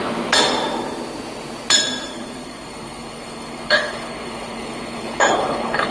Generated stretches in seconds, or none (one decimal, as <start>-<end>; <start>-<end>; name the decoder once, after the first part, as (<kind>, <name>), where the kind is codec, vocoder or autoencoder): 2.1-5.9 (codec, HILCodec)